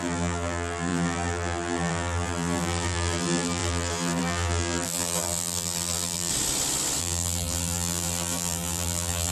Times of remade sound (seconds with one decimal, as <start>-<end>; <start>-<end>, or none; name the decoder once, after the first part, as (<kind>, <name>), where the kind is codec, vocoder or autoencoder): 0.0-6.3 (vocoder, BigVGAN v2); 7.0-9.3